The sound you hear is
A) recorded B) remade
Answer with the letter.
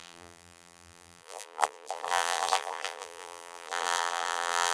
B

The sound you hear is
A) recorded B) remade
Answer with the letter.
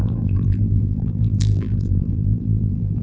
B